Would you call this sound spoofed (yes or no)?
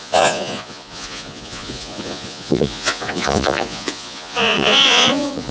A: yes